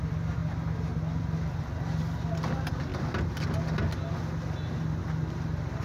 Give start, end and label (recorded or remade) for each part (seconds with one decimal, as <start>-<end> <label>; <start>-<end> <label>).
0.0-2.9 remade; 2.9-5.0 recorded; 5.0-5.8 remade